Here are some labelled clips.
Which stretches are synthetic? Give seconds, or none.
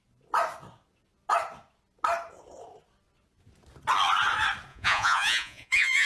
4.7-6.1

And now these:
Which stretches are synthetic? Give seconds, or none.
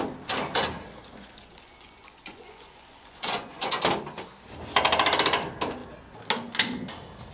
1.1-3.8